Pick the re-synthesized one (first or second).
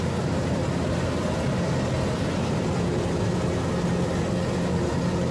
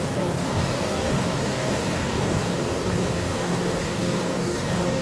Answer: second